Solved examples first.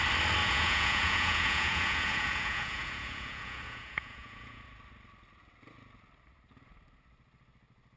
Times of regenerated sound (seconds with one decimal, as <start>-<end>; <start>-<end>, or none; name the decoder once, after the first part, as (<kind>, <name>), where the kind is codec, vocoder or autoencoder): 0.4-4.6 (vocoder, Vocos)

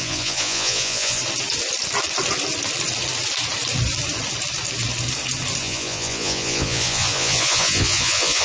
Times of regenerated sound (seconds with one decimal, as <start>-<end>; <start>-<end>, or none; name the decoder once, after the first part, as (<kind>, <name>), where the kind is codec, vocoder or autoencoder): 0.0-1.2 (vocoder, Vocos); 5.6-8.4

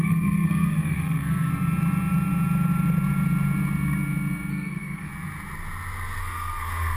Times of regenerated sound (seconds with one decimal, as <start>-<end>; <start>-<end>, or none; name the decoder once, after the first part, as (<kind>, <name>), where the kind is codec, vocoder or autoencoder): 0.0-1.5 (codec, SNAC); 4.5-5.1; 6.2-7.0

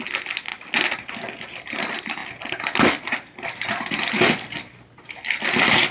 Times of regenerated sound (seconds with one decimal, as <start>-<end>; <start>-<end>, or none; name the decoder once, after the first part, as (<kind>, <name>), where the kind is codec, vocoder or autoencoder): none

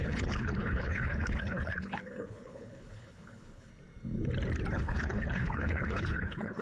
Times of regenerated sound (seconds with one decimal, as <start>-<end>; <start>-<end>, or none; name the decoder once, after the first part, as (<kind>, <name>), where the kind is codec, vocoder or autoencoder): 0.0-3.7 (codec, HILCodec); 4.7-6.6